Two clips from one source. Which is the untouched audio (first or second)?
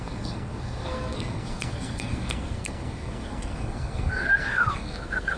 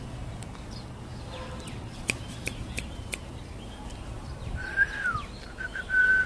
second